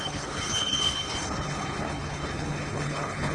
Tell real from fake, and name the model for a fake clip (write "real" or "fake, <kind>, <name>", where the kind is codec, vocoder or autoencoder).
fake, codec, HILCodec